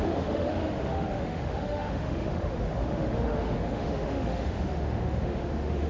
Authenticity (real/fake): fake